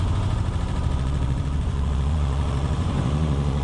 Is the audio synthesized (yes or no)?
yes